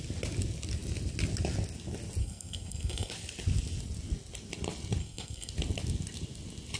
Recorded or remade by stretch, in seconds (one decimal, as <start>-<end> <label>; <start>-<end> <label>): 0.0-2.2 recorded; 2.2-3.1 remade; 3.1-5.0 recorded; 5.0-5.5 remade; 5.5-6.8 recorded